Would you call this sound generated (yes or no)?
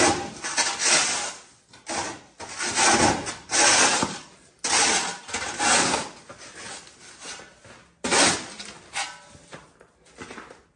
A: no